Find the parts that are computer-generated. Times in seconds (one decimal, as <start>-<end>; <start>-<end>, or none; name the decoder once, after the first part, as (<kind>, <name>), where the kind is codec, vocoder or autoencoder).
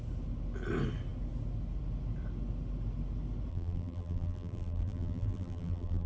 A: 3.5-6.1 (vocoder, BigVGAN v2)